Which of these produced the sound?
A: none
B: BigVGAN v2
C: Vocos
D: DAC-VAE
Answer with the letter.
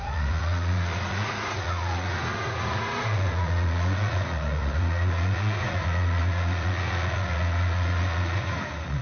C